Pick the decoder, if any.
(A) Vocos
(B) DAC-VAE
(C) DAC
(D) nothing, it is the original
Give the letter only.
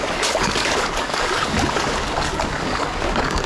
C